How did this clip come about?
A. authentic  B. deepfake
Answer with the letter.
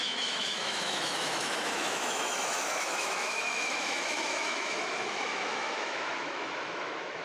B